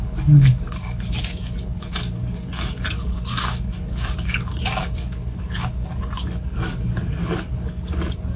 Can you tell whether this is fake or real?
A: fake